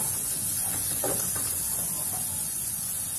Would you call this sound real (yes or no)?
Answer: no